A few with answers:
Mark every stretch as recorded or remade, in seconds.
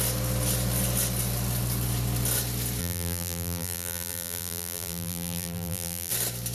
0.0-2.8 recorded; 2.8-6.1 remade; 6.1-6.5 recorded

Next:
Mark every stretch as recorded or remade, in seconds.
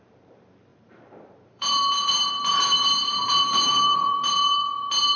0.0-5.2 remade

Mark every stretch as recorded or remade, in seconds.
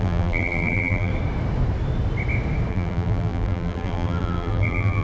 0.0-1.1 remade; 1.1-2.7 recorded; 2.7-5.0 remade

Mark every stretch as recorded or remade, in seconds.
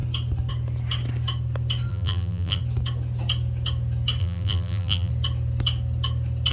0.0-1.9 recorded; 1.9-2.6 remade; 2.6-4.2 recorded; 4.2-5.1 remade; 5.1-6.5 recorded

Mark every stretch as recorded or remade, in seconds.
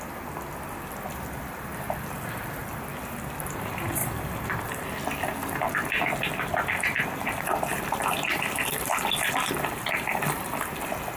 0.0-1.7 recorded; 1.7-2.5 remade; 2.5-4.0 recorded; 4.0-4.6 remade; 4.6-7.7 recorded; 7.7-11.2 remade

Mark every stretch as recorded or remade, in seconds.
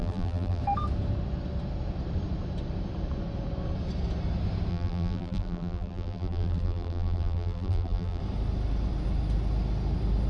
0.0-0.6 remade; 0.6-4.7 recorded; 4.7-8.2 remade; 8.2-10.3 recorded